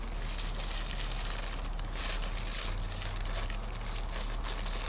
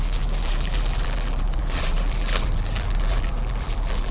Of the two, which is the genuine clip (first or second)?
first